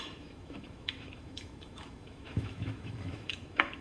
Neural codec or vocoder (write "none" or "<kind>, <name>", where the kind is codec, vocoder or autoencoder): autoencoder, DAC-VAE